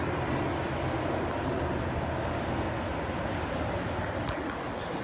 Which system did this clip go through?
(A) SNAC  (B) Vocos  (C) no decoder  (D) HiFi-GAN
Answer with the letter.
C